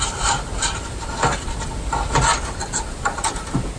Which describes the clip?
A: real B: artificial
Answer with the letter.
A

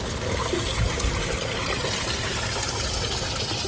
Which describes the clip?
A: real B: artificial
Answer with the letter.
A